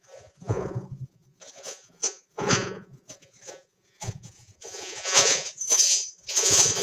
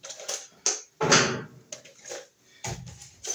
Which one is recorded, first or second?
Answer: second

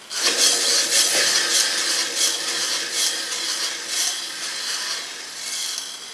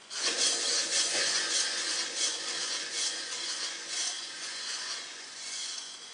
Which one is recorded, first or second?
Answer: first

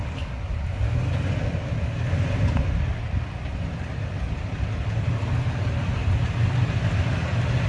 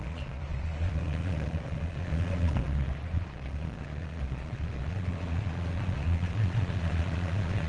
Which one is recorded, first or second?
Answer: first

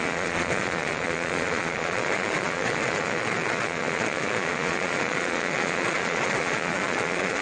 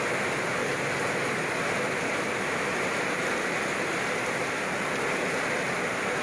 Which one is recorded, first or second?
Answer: second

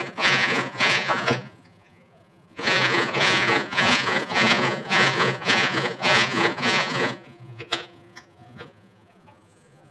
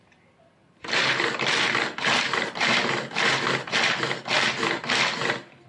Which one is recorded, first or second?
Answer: second